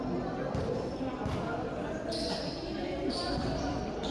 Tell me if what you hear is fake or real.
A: fake